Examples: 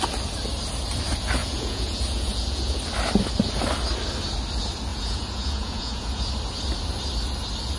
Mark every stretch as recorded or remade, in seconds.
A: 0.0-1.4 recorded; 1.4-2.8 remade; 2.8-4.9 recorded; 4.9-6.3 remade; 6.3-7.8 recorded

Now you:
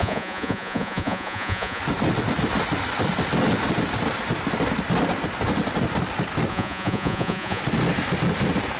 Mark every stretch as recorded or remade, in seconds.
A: 0.0-1.8 remade; 1.8-6.5 recorded; 6.5-7.6 remade; 7.6-8.8 recorded

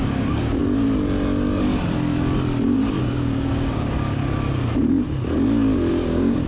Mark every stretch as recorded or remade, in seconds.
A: 0.0-0.6 remade; 0.6-3.0 recorded; 3.0-4.2 remade; 4.2-5.9 recorded; 5.9-6.5 remade